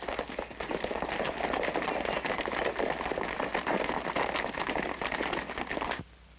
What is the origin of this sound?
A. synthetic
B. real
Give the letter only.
B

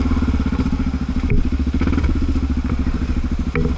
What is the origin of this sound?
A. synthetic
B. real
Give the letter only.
B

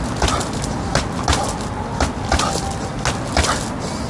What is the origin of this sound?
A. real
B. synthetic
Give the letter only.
A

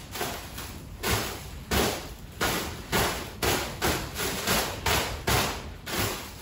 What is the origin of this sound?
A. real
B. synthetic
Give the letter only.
A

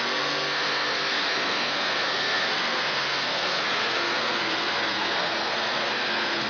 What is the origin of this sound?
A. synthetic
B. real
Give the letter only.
A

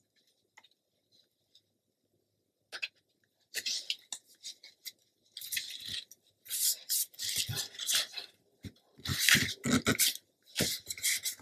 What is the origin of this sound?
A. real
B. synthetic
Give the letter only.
A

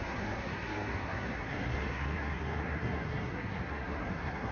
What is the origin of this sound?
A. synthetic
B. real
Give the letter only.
A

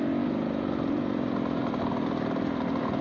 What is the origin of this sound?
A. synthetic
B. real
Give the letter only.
B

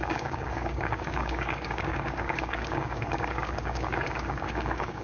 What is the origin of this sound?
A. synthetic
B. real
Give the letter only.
A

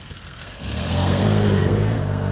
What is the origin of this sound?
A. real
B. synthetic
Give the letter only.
B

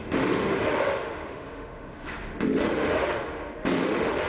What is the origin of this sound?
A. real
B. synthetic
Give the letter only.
B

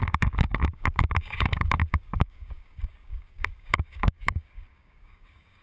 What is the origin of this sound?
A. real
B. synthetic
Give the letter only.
B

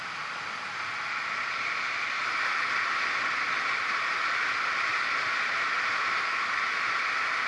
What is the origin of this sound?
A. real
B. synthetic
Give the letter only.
A